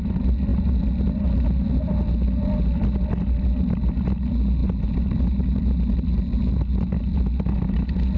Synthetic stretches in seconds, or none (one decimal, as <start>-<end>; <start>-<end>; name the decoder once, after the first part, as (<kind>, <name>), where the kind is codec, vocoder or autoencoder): none